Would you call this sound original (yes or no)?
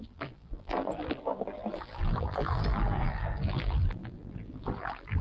no